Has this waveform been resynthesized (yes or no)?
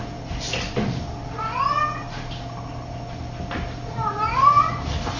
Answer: no